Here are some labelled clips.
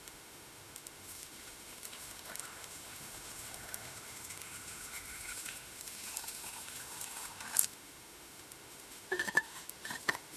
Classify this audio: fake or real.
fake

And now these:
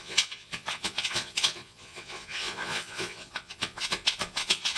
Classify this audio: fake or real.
fake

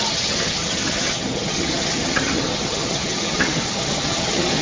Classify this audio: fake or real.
fake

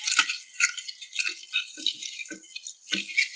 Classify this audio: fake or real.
real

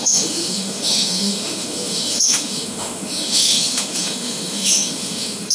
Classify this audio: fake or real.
fake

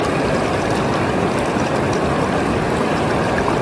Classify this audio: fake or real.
real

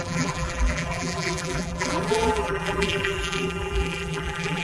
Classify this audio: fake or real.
fake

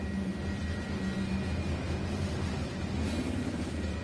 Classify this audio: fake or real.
real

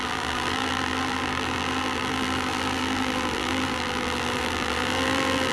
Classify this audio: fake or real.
fake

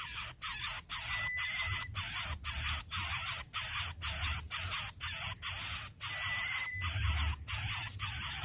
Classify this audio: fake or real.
real